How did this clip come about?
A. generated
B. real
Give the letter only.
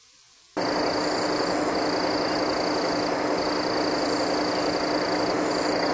B